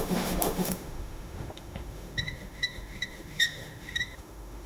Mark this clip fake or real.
fake